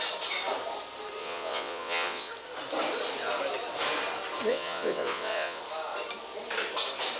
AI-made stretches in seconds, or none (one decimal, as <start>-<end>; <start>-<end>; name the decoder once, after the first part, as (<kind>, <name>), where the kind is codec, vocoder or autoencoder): 1.2-2.3 (vocoder, WaveNeXt); 4.5-5.6